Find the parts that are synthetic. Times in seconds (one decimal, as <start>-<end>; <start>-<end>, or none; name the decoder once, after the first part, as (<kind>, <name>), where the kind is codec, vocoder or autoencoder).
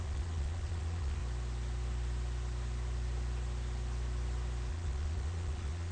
0.0-1.2 (vocoder, Vocos); 4.7-5.9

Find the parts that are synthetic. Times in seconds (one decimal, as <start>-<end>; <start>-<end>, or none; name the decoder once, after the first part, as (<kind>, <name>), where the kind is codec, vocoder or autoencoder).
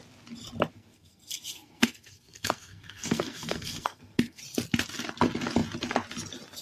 0.7-4.4 (codec, SNAC)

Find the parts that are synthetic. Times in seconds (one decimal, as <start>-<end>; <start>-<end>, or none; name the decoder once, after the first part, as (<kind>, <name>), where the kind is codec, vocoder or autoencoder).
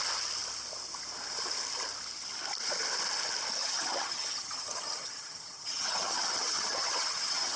3.6-7.6 (vocoder, HiFi-GAN)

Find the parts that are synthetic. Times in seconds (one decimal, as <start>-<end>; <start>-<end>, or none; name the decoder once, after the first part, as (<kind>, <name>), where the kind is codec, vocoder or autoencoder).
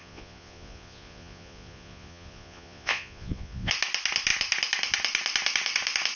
0.0-3.7 (vocoder, Vocos)